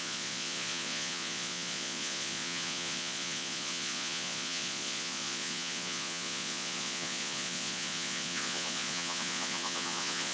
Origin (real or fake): fake